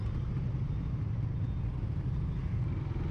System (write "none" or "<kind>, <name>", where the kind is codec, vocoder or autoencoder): none